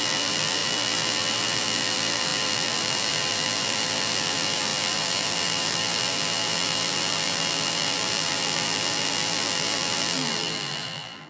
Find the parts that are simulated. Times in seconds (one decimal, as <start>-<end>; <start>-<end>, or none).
0.0-11.3